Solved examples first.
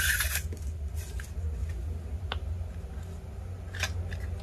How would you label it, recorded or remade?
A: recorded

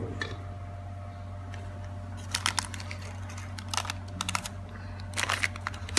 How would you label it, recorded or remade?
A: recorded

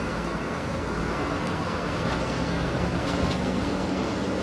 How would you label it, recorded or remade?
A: remade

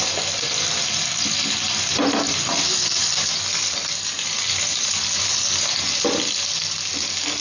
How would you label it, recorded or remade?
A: recorded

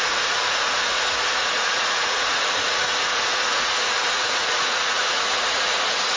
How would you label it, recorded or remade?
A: remade